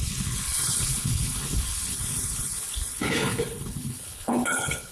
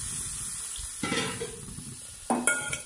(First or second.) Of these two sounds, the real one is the second